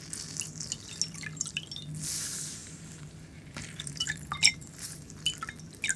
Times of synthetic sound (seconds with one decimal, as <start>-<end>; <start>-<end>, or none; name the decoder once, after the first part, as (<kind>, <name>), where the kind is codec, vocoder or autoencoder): 2.6-5.1 (vocoder, BigVGAN v2)

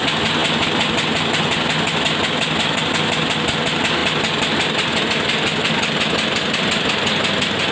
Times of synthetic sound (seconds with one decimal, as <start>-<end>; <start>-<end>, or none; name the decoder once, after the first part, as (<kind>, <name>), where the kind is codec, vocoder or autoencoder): 4.0-5.0 (vocoder, BigVGAN v2)

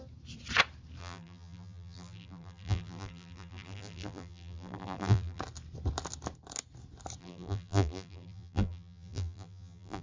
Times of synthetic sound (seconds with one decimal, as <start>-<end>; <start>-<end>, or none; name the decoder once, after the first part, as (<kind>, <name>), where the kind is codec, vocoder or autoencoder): 1.0-5.4 (vocoder, BigVGAN v2); 7.2-10.0

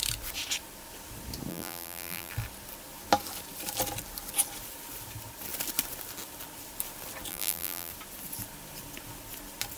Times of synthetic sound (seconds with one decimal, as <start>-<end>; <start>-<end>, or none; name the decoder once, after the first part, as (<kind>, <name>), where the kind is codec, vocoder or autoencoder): 1.5-2.3 (vocoder, BigVGAN v2); 7.3-7.9